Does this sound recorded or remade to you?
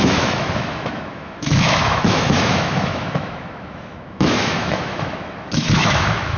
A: remade